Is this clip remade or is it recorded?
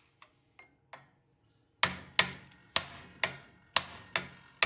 recorded